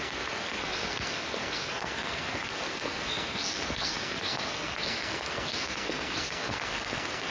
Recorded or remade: remade